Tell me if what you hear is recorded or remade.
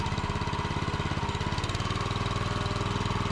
recorded